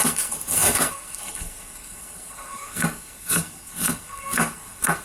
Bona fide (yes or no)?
no